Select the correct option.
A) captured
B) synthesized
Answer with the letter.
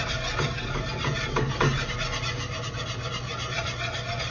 A